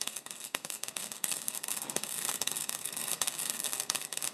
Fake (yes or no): yes